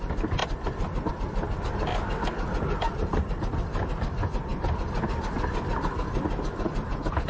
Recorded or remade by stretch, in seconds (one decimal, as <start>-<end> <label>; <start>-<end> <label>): 0.0-7.3 recorded